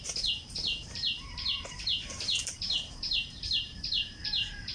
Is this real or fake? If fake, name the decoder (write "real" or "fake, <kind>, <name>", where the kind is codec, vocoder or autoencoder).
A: fake, vocoder, BigVGAN v2